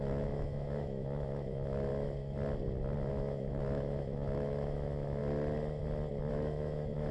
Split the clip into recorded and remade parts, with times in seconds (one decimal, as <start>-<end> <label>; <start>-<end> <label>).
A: 0.0-1.9 remade; 1.9-3.1 recorded; 3.1-5.2 remade; 5.2-6.3 recorded; 6.3-7.1 remade

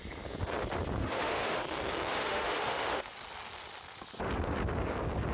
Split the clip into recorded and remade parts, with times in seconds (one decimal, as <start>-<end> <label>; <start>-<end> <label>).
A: 0.0-1.0 recorded; 1.0-1.6 remade; 1.6-2.1 recorded; 2.1-3.1 remade; 3.1-5.3 recorded